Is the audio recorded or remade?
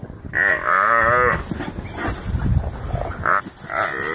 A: recorded